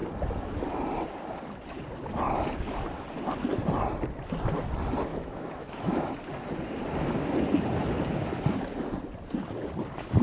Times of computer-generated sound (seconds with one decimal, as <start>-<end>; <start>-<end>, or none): 5.1-6.1